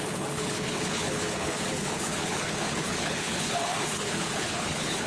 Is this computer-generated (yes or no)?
yes